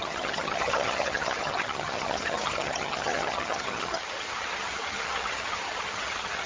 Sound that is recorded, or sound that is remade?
remade